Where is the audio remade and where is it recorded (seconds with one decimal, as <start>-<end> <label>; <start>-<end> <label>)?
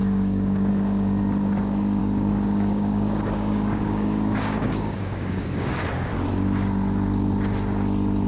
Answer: 0.0-0.7 remade; 0.7-2.0 recorded; 2.0-6.1 remade; 6.1-8.3 recorded